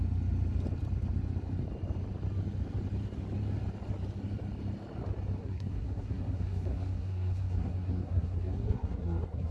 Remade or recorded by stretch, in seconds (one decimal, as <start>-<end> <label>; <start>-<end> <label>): 0.0-5.4 recorded; 5.4-9.5 remade